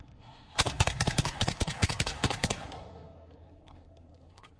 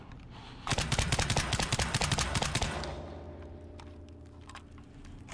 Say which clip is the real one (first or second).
second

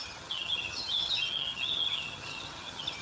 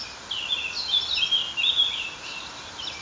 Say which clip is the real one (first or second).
second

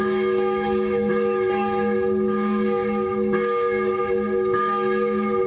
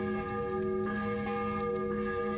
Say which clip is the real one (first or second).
second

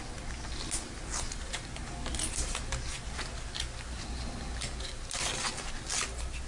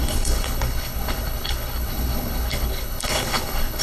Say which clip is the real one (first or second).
first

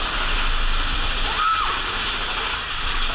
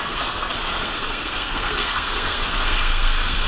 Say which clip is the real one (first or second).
first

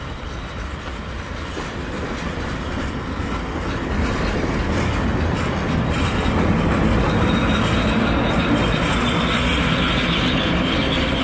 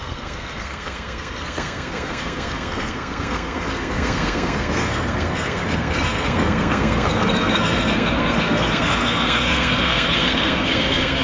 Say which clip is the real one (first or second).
first